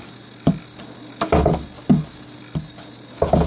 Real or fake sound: real